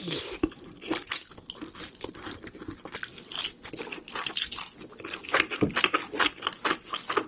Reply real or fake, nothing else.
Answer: real